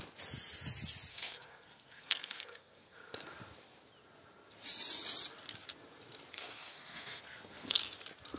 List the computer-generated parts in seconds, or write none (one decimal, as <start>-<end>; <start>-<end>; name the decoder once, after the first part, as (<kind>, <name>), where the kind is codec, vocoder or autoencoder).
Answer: 1.1-3.1 (codec, SNAC); 6.3-7.8